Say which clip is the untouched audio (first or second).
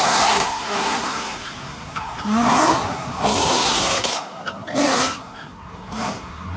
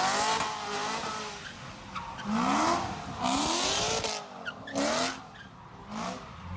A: second